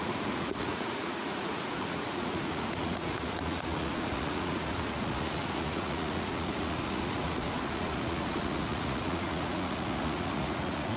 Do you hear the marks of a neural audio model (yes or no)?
yes